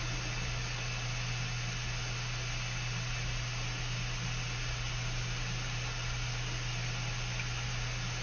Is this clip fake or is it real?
real